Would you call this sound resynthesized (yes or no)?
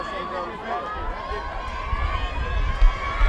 no